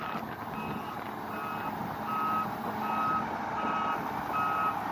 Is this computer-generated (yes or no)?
no